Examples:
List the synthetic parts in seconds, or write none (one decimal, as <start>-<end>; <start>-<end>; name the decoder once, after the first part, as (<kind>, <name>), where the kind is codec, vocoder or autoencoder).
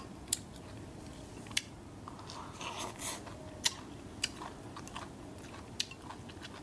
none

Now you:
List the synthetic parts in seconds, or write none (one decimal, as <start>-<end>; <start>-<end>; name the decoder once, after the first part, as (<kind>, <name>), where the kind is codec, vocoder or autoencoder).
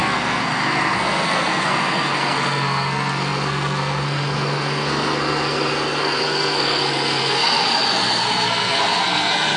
0.0-9.6 (codec, SNAC)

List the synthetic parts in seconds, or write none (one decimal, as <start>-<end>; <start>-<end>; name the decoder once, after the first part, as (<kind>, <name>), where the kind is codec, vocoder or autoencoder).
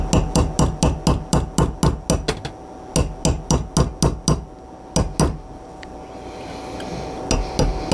none